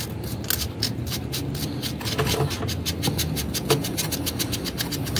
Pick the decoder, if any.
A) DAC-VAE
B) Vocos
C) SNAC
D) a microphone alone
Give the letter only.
D